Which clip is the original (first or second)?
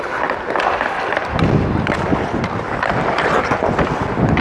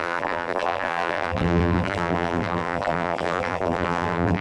first